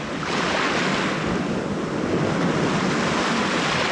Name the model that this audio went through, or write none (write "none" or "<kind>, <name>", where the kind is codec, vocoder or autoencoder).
none